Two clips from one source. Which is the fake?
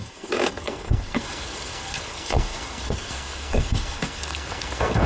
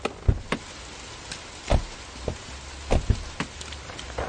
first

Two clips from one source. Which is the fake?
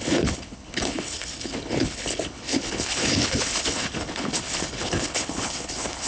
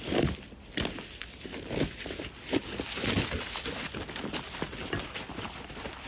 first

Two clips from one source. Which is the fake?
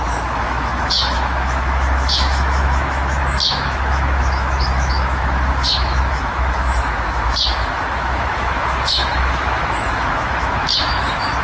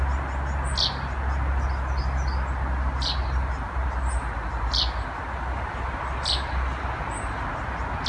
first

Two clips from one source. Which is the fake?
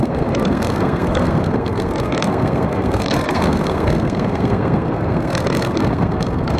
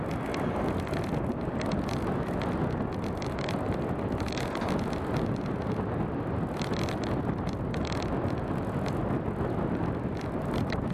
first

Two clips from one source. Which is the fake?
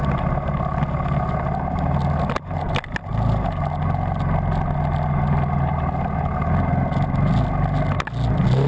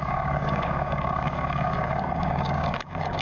second